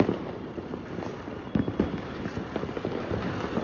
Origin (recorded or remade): recorded